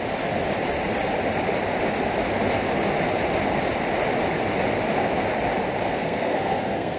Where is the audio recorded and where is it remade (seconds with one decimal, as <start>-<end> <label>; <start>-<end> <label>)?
0.0-5.9 recorded; 5.9-7.0 remade